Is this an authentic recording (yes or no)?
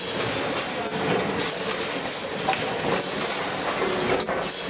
yes